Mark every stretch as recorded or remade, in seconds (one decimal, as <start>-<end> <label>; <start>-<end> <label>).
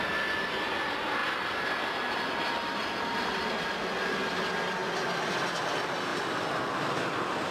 0.0-7.5 recorded